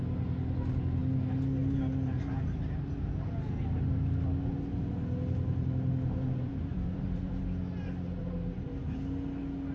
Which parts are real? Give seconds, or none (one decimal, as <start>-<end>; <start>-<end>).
0.0-6.7; 7.4-8.2; 8.8-9.7